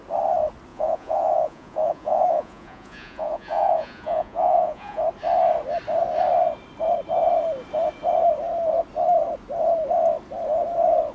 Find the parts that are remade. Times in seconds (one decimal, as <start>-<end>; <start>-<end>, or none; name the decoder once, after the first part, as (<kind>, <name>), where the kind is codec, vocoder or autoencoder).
0.7-5.0 (vocoder, Vocos)